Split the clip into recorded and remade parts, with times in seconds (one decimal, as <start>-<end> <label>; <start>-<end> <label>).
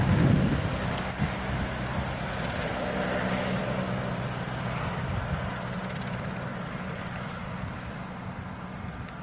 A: 0.0-6.5 recorded; 6.5-7.4 remade; 7.4-9.2 recorded